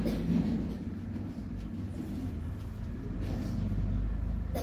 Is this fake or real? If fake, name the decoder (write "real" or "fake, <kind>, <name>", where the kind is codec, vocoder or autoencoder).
real